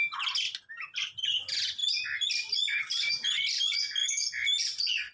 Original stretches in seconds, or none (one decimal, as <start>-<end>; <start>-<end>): 0.0-5.1